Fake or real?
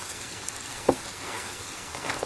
fake